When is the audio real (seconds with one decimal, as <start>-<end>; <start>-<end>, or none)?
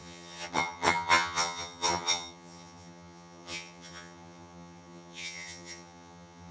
none